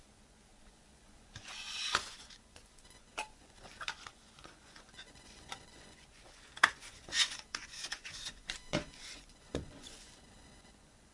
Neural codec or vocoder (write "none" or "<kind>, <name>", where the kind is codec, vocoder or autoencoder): vocoder, Vocos